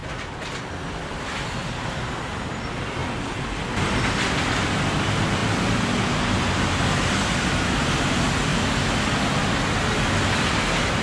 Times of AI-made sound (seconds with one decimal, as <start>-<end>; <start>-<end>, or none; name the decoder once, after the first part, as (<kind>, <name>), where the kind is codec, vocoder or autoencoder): none